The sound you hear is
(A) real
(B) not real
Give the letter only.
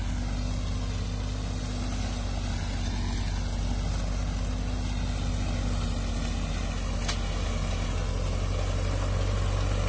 A